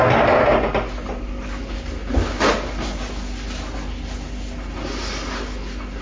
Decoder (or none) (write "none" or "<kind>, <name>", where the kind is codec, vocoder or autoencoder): none